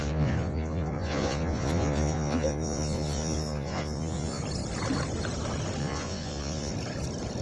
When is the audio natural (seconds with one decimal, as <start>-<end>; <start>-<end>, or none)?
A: 4.4-5.8; 6.7-7.4